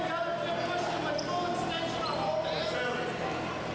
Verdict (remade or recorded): recorded